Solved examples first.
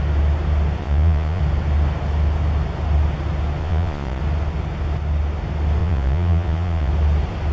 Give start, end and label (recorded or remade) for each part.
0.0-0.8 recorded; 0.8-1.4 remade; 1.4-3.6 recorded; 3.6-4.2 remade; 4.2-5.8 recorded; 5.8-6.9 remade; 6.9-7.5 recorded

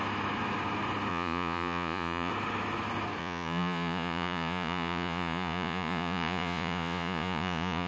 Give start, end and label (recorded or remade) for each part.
0.0-1.1 recorded; 1.1-2.3 remade; 2.3-3.2 recorded; 3.2-7.9 remade

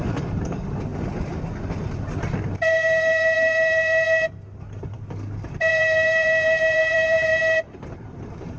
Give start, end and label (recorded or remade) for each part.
0.0-0.9 remade; 0.9-5.7 recorded; 5.7-8.6 remade

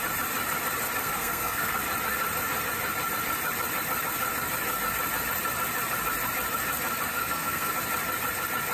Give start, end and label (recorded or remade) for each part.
0.0-1.0 recorded; 1.0-1.7 remade; 1.7-7.1 recorded; 7.1-7.7 remade; 7.7-8.7 recorded

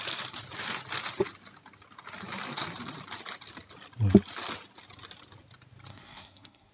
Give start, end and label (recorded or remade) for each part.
0.0-5.9 recorded; 5.9-6.7 remade

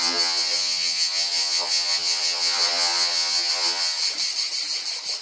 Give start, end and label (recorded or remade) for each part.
0.0-4.0 remade; 4.0-5.2 recorded

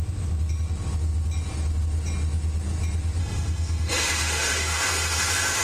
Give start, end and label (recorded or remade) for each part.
0.0-3.2 recorded; 3.2-5.6 remade